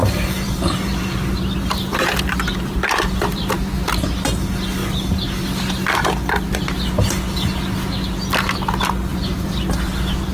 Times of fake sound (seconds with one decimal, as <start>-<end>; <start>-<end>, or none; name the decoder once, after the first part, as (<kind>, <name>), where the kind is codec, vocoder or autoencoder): 0.0-4.1 (vocoder, BigVGAN v2); 6.2-6.9; 9.1-9.7